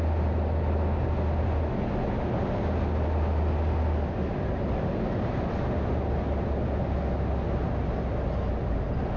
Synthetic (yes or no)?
no